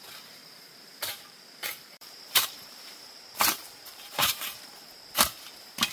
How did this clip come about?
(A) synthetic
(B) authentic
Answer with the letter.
A